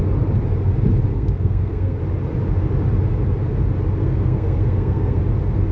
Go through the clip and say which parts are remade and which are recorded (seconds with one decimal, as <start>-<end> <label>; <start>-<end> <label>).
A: 0.0-1.1 recorded; 1.1-2.0 remade; 2.0-4.0 recorded; 4.0-5.2 remade; 5.2-5.7 recorded